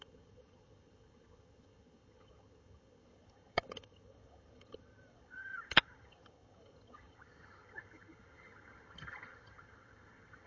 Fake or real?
fake